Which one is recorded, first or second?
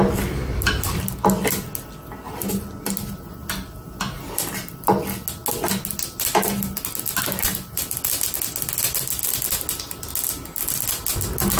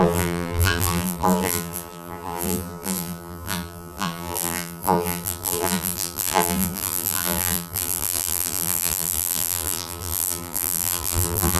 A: first